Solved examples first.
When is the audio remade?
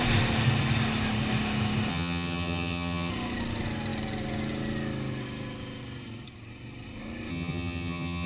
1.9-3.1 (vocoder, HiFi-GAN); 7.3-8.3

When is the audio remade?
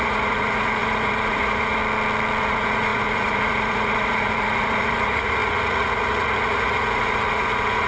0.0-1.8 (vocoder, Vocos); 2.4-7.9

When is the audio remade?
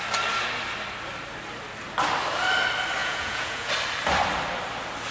3.0-3.7 (vocoder, Vocos)